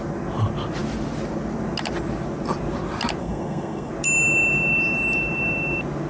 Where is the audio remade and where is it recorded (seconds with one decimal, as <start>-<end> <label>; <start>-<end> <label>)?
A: 0.0-3.2 recorded; 3.2-3.9 remade; 3.9-6.1 recorded

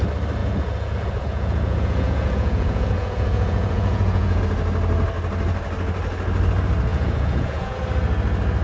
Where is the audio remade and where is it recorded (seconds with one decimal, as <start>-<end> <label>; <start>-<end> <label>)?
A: 0.0-0.4 recorded; 0.4-4.4 remade; 4.4-6.9 recorded; 6.9-7.8 remade; 7.8-8.6 recorded